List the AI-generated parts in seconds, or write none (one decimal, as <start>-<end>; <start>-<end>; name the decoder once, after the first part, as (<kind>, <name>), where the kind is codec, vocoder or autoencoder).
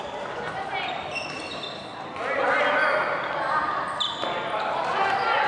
none